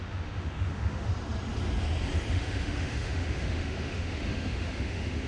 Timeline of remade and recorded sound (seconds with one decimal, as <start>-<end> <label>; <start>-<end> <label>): 0.0-1.1 remade; 1.1-2.3 recorded; 2.3-5.3 remade